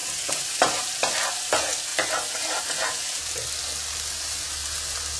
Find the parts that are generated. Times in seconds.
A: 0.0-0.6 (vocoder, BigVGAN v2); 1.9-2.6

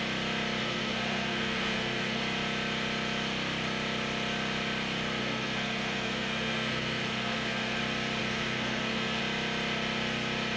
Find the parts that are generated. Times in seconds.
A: 0.6-2.2 (codec, SNAC); 5.2-7.8; 8.2-9.2